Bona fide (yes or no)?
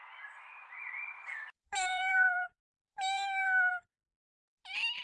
no